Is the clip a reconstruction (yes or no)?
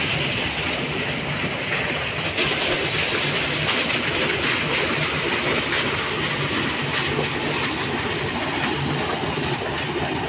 no